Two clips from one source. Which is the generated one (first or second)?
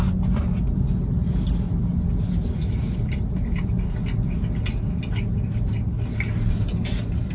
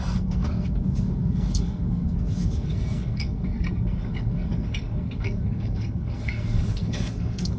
second